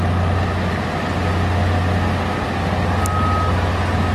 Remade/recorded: recorded